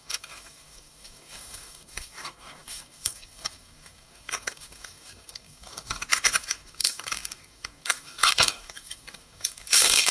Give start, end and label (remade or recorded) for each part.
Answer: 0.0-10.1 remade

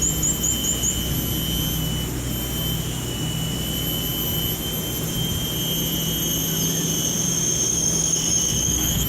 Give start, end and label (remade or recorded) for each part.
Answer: 0.0-7.7 recorded; 7.7-9.1 remade

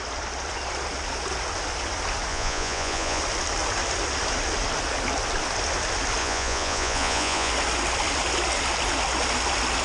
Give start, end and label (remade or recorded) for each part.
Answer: 0.0-2.3 recorded; 2.3-3.2 remade; 3.2-6.2 recorded; 6.2-7.5 remade; 7.5-9.8 recorded

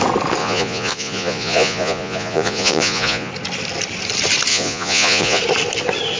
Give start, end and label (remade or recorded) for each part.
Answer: 0.0-0.4 recorded; 0.4-3.3 remade; 3.3-4.5 recorded; 4.5-5.4 remade; 5.4-6.2 recorded

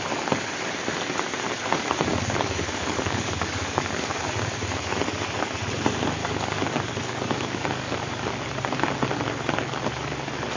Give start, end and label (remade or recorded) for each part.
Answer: 0.0-2.1 recorded; 2.1-4.3 remade; 4.3-6.2 recorded; 6.2-8.1 remade; 8.1-10.6 recorded

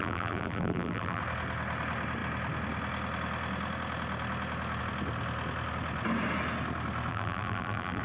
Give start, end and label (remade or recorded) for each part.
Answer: 0.0-1.2 remade; 1.2-7.1 recorded; 7.1-8.0 remade

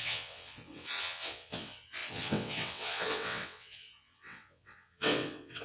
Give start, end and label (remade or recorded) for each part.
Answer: 0.0-5.6 remade

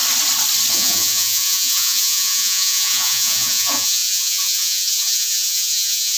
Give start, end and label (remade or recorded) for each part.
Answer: 0.0-0.7 recorded; 0.7-6.2 remade